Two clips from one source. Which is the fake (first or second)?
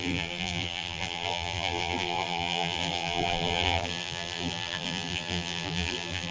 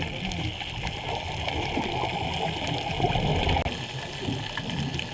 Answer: first